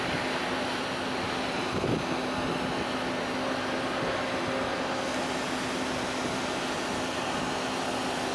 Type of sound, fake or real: real